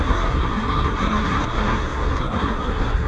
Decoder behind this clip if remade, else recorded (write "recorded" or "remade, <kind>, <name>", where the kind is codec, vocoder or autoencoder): remade, codec, SNAC